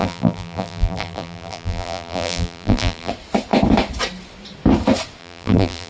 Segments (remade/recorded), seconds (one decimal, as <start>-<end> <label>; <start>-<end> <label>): 0.0-3.1 remade; 3.1-5.2 recorded; 5.2-5.9 remade